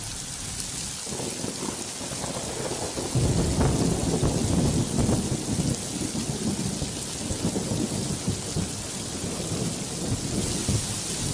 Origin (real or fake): real